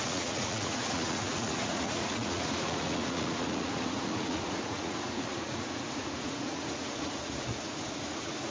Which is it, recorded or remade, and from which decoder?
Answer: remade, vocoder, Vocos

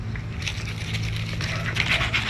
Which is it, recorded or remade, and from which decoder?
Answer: recorded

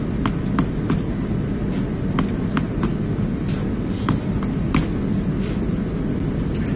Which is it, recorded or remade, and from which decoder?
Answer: recorded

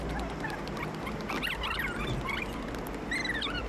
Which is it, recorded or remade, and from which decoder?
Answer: recorded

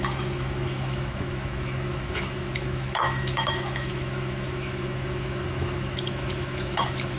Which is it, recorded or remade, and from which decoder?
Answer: remade, autoencoder, DAC-VAE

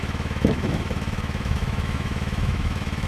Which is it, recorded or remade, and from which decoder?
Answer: remade, autoencoder, DAC-VAE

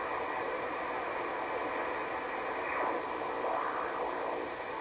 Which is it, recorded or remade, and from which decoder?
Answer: recorded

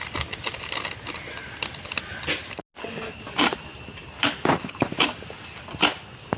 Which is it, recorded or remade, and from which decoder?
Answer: recorded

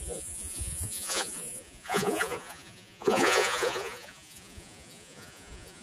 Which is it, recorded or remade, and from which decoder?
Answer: remade, vocoder, Vocos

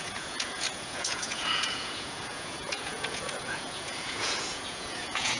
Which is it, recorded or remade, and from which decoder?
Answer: remade, vocoder, Vocos